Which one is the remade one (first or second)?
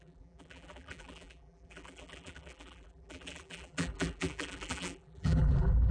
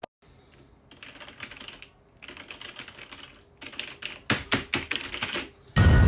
first